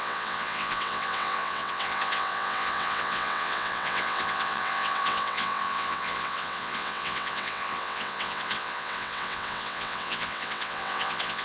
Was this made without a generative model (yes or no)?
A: no